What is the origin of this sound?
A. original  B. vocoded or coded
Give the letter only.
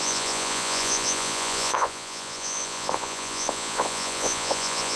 B